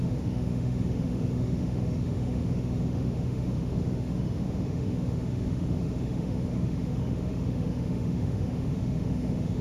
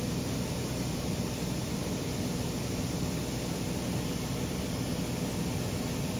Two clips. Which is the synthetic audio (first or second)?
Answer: first